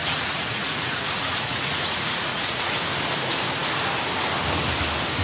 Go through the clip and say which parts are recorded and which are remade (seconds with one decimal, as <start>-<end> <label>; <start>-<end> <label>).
0.0-2.8 remade; 2.8-5.2 recorded